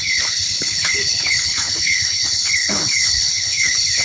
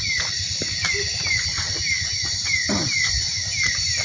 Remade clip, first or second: first